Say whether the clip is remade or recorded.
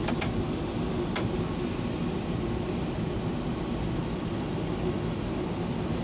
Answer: recorded